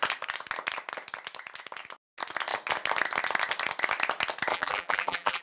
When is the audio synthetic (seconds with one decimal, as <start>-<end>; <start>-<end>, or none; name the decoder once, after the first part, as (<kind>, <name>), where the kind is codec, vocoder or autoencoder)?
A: 4.5-5.4 (vocoder, BigVGAN v2)